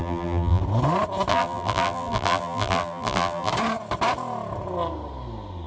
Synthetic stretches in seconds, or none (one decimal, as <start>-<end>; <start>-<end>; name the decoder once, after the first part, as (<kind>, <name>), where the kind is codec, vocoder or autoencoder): 0.0-0.6 (vocoder, BigVGAN v2); 1.3-3.5